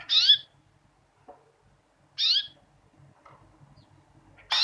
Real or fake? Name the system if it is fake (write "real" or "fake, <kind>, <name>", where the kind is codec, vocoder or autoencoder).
real